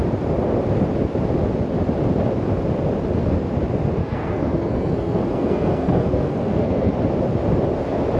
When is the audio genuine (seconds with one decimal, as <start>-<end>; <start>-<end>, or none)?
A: 0.0-4.0; 6.9-8.2